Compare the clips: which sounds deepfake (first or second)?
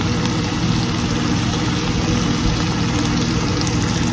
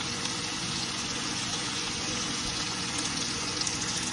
second